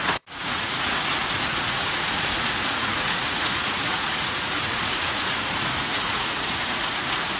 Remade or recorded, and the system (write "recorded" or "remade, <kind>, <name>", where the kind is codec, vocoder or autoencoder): remade, vocoder, Vocos